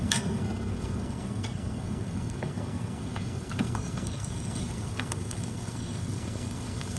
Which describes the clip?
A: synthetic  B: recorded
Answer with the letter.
A